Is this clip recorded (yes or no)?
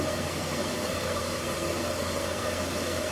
no